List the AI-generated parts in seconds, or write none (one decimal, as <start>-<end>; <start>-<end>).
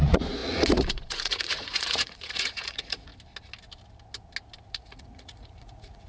0.0-3.1; 4.7-6.1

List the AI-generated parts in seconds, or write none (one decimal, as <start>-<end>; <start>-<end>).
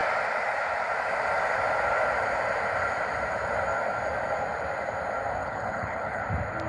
5.4-6.2